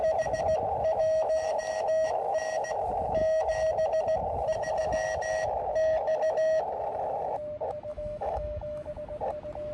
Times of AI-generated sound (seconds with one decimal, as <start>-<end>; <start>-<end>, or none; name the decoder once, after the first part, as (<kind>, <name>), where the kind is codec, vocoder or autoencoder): 1.0-1.5 (autoencoder, DAC-VAE); 7.9-8.9